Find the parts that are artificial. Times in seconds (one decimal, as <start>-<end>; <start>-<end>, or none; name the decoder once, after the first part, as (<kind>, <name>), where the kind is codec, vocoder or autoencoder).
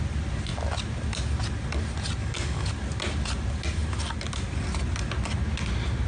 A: 2.2-2.7 (codec, DAC)